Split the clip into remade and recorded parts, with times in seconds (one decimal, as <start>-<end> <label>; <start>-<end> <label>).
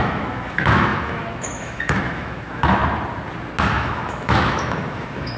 0.0-2.8 remade; 2.8-3.6 recorded; 3.6-5.4 remade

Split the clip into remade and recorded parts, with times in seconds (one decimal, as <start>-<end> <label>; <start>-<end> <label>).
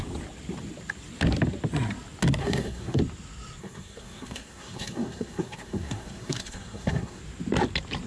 0.0-2.4 recorded; 2.4-3.0 remade; 3.0-3.6 recorded; 3.6-7.2 remade; 7.2-8.1 recorded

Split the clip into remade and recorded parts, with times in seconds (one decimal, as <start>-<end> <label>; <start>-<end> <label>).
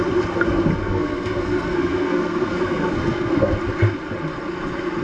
0.0-0.8 recorded; 0.8-3.6 remade; 3.6-5.0 recorded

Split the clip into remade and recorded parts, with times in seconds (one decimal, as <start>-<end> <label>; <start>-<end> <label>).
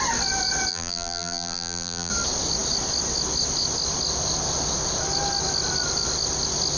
0.0-0.7 recorded; 0.7-2.1 remade; 2.1-6.8 recorded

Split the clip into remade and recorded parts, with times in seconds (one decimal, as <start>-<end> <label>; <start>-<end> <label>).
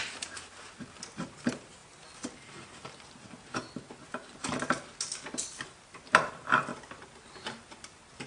0.0-8.3 recorded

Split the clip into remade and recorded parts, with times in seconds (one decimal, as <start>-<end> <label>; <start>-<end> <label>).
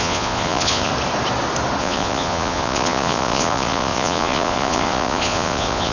0.0-0.9 remade; 0.9-1.8 recorded; 1.8-5.9 remade